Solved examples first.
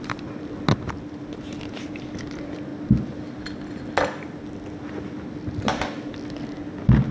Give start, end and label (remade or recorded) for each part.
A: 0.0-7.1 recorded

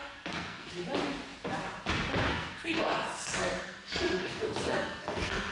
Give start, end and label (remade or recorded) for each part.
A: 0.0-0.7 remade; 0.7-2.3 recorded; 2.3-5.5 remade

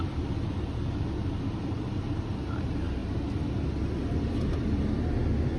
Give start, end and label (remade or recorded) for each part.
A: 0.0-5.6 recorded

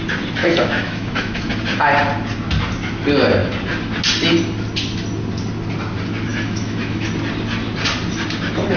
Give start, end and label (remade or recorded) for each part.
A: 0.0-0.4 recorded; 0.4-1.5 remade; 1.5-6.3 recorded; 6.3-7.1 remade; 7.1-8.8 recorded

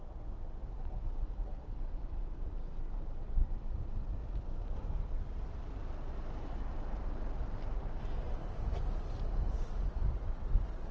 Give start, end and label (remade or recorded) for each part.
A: 0.0-0.6 recorded; 0.6-3.3 remade; 3.3-4.2 recorded; 4.2-5.0 remade; 5.0-8.4 recorded; 8.4-9.8 remade; 9.8-10.9 recorded

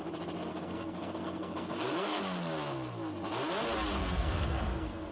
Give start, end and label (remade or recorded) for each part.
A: 0.0-0.5 recorded; 0.5-2.2 remade; 2.2-4.0 recorded; 4.0-5.1 remade